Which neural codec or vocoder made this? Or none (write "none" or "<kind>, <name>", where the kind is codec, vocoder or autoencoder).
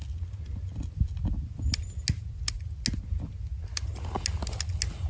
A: none